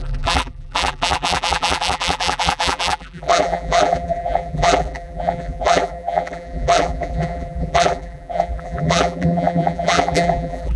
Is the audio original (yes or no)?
no